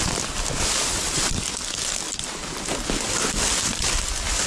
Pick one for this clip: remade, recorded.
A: recorded